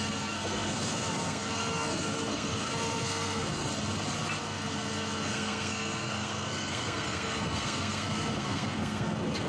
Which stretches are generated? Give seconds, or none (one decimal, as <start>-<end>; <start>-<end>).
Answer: 0.0-3.6; 4.4-9.5